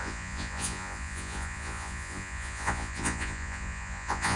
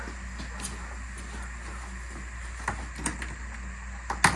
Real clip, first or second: second